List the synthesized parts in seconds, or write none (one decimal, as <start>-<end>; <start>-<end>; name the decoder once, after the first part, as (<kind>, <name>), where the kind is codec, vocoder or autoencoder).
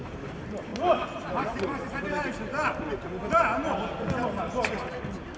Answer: 0.0-0.7 (vocoder, BigVGAN v2); 1.3-3.2